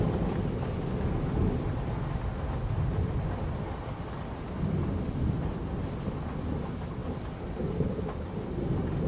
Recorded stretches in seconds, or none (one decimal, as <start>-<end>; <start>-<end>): 0.0-9.1